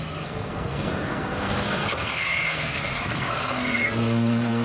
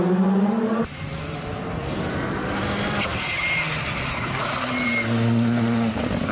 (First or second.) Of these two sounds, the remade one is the first